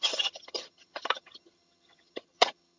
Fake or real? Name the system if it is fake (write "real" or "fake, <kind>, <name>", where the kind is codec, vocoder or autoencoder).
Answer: fake, vocoder, HiFi-GAN